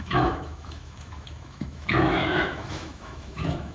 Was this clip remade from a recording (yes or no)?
yes